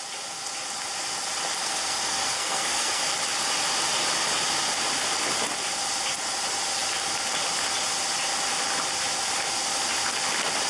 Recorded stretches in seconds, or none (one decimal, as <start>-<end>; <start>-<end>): 0.0-1.6; 3.0-10.7